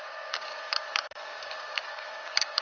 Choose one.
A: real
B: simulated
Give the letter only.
B